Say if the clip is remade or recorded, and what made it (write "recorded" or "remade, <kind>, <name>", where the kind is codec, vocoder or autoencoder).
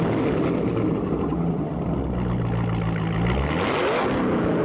recorded